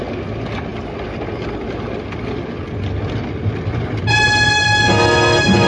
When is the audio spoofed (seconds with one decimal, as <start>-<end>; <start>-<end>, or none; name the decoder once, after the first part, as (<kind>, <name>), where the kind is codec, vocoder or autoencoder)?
none